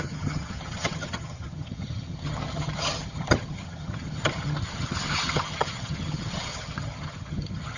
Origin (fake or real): fake